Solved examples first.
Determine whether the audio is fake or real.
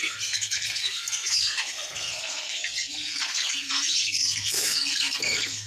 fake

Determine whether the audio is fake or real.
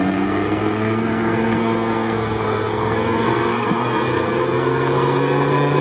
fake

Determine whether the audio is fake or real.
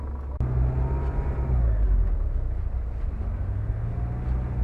real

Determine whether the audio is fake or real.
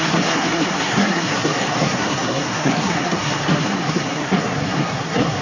fake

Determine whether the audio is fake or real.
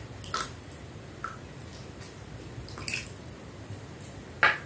real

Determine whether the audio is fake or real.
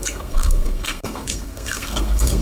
fake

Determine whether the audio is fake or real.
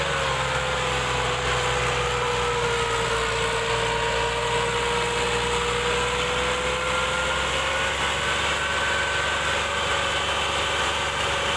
real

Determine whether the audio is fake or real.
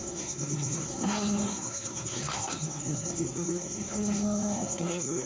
fake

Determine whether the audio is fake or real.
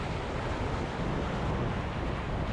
real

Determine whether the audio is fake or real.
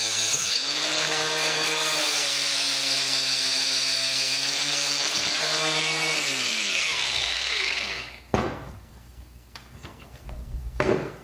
fake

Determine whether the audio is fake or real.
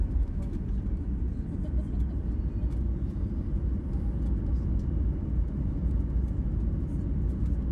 real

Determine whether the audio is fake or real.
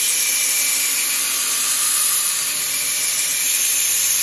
real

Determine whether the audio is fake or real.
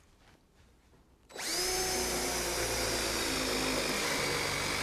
real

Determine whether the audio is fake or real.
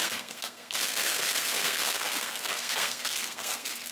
fake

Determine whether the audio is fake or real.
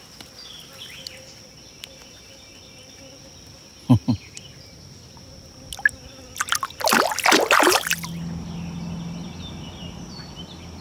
real